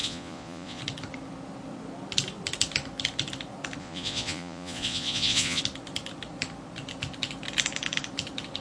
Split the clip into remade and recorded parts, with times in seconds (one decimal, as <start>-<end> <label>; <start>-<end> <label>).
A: 0.0-0.8 remade; 0.8-3.8 recorded; 3.8-5.6 remade; 5.6-8.6 recorded

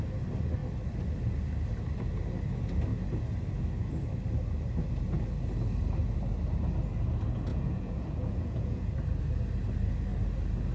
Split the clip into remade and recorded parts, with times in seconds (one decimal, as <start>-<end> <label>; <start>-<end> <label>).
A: 0.0-7.5 recorded; 7.5-8.8 remade; 8.8-10.7 recorded

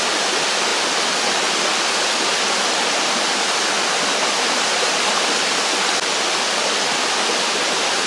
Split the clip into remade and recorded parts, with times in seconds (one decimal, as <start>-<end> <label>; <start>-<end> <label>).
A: 0.0-8.1 recorded

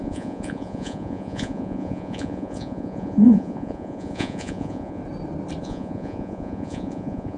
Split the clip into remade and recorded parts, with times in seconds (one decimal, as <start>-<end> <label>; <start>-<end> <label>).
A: 0.0-5.0 remade; 5.0-5.6 recorded; 5.6-7.4 remade

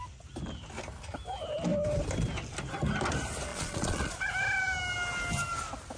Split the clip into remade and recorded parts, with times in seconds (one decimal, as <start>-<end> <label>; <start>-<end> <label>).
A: 0.0-3.5 recorded; 3.5-4.3 remade; 4.3-6.0 recorded